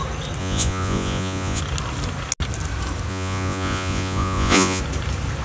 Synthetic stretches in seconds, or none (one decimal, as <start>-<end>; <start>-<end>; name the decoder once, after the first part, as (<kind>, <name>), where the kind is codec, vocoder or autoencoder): 0.4-1.6 (vocoder, Vocos); 3.1-4.8